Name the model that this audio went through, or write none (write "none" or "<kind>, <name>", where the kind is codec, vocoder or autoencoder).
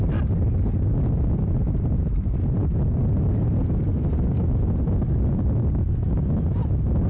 none